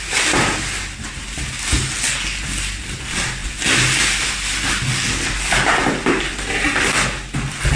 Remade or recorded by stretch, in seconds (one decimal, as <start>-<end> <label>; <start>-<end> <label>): 0.0-7.8 recorded